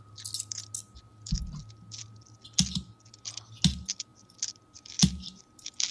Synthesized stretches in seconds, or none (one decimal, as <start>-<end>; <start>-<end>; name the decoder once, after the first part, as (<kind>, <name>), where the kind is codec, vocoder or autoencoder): none